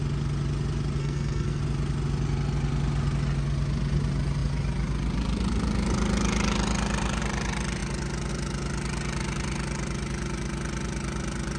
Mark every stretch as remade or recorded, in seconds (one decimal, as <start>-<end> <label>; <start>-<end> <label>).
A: 0.0-1.0 recorded; 1.0-1.6 remade; 1.6-11.6 recorded